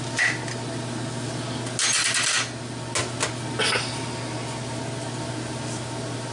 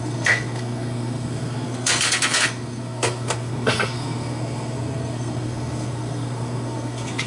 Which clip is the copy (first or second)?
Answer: second